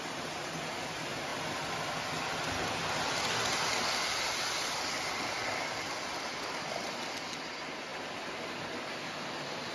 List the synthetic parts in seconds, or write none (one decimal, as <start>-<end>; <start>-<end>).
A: none